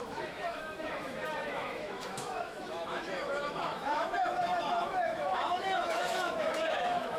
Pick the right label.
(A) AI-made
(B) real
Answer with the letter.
A